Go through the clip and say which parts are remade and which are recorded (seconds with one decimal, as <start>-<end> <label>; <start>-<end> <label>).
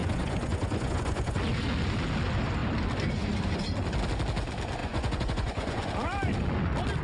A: 0.0-1.4 remade; 1.4-4.8 recorded; 4.8-5.9 remade; 5.9-7.0 recorded